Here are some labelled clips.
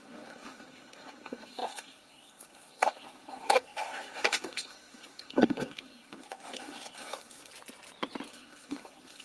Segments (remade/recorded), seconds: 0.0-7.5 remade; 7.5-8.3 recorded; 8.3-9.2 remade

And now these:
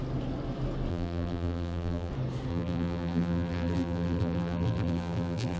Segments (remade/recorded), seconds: 0.0-0.9 recorded; 0.9-2.1 remade; 2.1-2.5 recorded; 2.5-5.6 remade

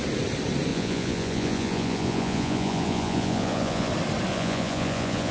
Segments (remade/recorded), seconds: 0.0-0.7 recorded; 0.7-3.9 remade; 3.9-4.3 recorded; 4.3-5.3 remade

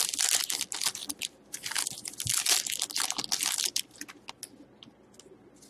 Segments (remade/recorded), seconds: 0.0-5.7 recorded

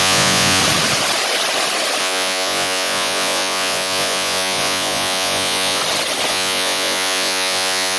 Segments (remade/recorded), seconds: 0.0-0.6 remade; 0.6-2.0 recorded; 2.0-5.8 remade; 5.8-6.3 recorded; 6.3-8.0 remade

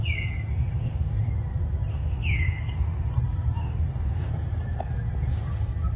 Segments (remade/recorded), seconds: 0.0-0.5 recorded; 0.5-1.3 remade; 1.3-1.9 recorded; 1.9-3.1 remade; 3.1-3.6 recorded; 3.6-4.3 remade; 4.3-6.0 recorded

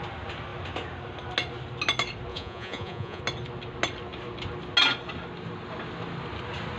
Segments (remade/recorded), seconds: 0.0-2.3 recorded; 2.3-3.2 remade; 3.2-6.8 recorded

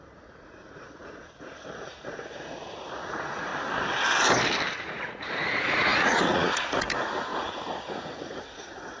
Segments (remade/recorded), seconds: 0.0-3.5 remade; 3.5-4.7 recorded; 4.7-9.0 remade